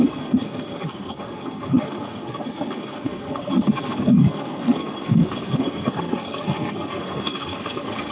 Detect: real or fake fake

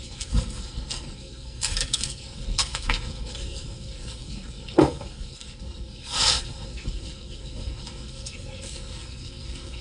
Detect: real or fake fake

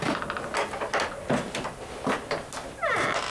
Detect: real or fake real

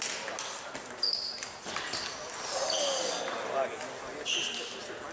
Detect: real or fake real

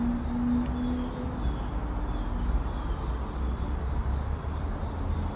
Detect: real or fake real